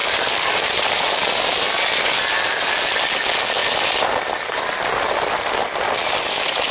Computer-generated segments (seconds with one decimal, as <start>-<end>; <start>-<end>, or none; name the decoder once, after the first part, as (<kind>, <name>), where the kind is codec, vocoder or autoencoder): 0.0-0.8 (vocoder, BigVGAN v2); 3.6-4.6